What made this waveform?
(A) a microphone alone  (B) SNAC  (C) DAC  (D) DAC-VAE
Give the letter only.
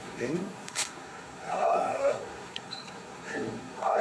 B